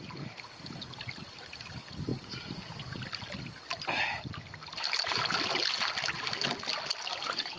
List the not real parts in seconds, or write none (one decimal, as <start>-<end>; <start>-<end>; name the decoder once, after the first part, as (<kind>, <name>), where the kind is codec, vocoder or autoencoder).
none